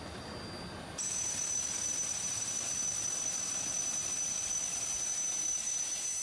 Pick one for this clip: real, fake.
real